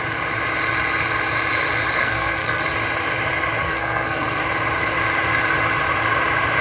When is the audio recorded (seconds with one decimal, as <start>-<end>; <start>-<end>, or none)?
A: 0.0-2.0; 2.6-3.6; 4.4-6.6